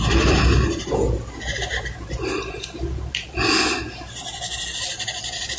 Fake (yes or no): no